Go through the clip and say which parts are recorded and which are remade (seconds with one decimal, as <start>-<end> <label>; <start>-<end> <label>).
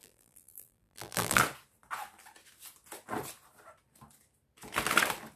0.0-1.4 remade; 1.4-5.4 recorded